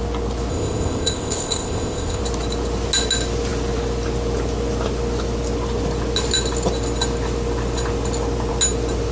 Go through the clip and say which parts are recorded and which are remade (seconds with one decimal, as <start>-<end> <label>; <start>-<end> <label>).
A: 0.0-0.5 recorded; 0.5-2.2 remade; 2.2-9.1 recorded